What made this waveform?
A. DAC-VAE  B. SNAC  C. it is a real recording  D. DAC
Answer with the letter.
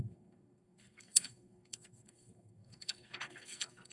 B